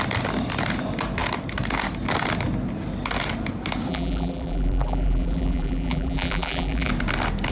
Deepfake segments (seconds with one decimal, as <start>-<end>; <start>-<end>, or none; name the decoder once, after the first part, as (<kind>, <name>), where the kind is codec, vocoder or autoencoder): 3.9-6.9 (vocoder, BigVGAN v2)